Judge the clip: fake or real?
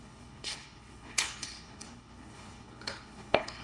fake